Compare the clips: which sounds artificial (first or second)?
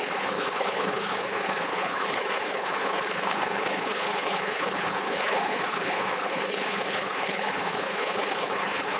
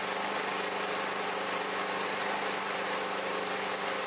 first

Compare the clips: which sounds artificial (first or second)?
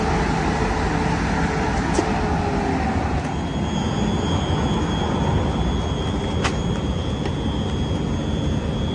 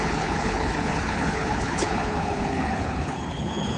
second